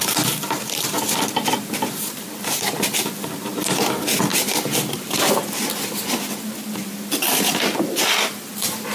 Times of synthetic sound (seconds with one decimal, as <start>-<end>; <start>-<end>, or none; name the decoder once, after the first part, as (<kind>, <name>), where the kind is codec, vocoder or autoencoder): none